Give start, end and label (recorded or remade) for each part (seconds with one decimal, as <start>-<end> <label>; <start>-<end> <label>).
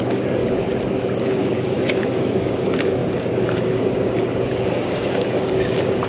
0.0-0.4 remade; 0.4-1.2 recorded; 1.2-6.1 remade